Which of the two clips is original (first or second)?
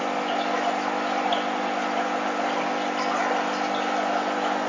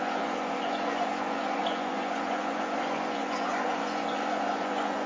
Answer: first